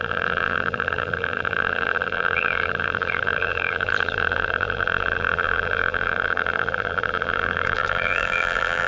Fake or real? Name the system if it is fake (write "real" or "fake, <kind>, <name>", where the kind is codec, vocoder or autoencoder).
fake, vocoder, BigVGAN v2